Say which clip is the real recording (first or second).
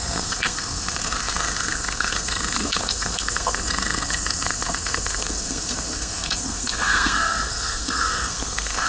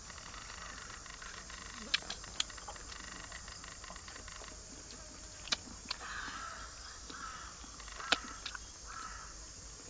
second